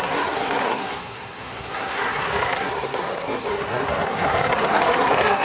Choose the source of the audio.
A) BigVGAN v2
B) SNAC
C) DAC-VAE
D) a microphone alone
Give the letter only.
B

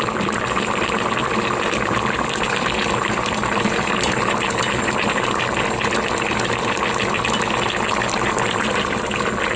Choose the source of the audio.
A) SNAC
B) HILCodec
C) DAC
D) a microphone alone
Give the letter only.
D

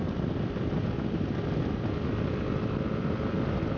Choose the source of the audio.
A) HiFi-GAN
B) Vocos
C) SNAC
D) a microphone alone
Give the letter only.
D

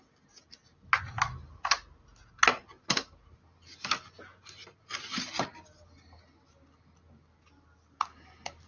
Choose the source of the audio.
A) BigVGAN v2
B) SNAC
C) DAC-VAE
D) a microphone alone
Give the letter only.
D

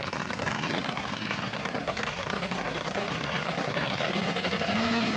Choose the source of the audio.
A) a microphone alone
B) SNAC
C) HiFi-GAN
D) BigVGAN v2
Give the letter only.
B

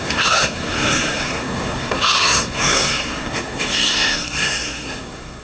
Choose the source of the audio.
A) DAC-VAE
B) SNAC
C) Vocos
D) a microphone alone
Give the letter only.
B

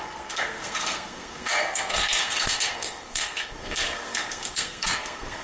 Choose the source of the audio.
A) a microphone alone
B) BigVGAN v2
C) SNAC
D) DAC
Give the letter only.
C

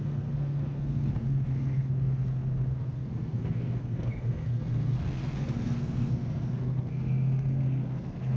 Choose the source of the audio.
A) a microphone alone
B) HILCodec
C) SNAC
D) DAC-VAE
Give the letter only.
C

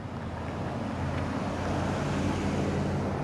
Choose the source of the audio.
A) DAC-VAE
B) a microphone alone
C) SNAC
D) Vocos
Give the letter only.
B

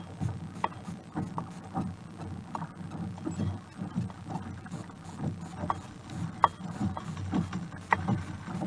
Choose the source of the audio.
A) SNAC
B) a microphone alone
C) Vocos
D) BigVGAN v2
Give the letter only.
B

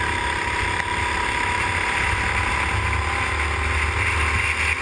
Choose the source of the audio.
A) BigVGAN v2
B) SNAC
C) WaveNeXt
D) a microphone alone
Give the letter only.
D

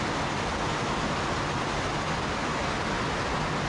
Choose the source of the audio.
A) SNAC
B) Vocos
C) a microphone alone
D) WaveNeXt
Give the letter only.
C